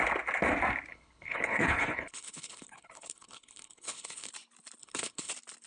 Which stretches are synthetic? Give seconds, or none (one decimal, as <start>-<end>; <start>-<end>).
0.9-4.3; 4.8-5.3